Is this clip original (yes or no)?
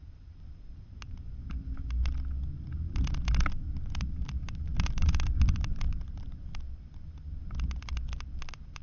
yes